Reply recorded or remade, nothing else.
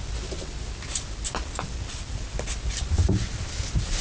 recorded